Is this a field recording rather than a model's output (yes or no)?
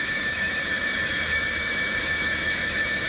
no